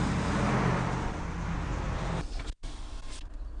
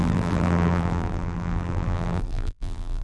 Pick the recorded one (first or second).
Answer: first